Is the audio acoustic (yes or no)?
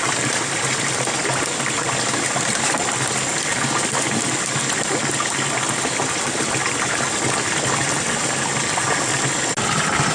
yes